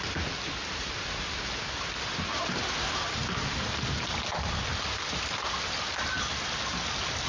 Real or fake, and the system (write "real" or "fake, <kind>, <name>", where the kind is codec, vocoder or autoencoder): real